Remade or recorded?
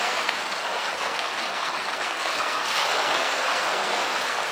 remade